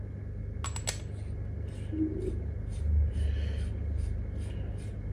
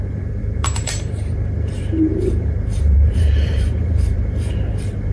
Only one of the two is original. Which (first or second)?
first